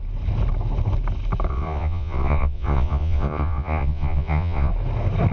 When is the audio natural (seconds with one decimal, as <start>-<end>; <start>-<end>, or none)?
0.0-1.5; 4.7-5.3